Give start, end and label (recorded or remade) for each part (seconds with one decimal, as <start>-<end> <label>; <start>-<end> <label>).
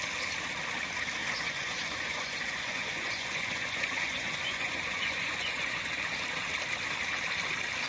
0.0-1.2 recorded; 1.2-5.8 remade; 5.8-7.9 recorded